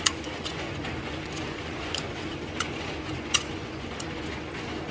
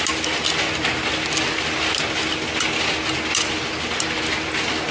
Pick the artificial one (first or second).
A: first